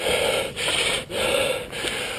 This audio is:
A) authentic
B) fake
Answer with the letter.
A